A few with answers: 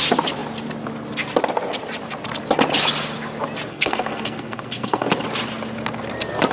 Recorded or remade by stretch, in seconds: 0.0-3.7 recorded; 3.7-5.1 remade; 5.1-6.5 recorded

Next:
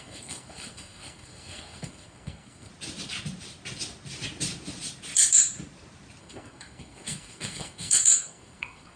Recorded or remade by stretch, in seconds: 0.0-2.7 remade; 2.7-6.2 recorded; 6.2-9.0 remade

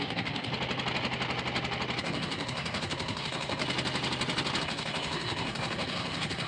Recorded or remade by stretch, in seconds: 0.0-0.5 remade; 0.5-2.0 recorded; 2.0-3.6 remade; 3.6-4.6 recorded; 4.6-6.5 remade

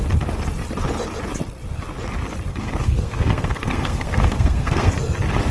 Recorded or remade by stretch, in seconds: 0.0-2.5 recorded; 2.5-4.9 remade; 4.9-5.5 recorded

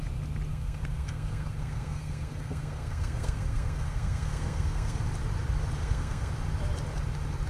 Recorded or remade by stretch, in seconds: 0.0-0.5 recorded; 0.5-5.0 remade; 5.0-5.8 recorded; 5.8-6.3 remade; 6.3-7.5 recorded

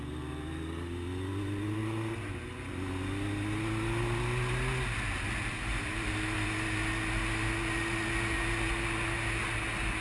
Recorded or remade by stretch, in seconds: 0.0-10.0 recorded

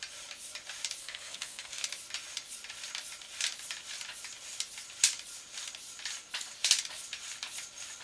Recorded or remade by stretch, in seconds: 0.0-1.0 recorded; 1.0-1.8 remade; 1.8-8.0 recorded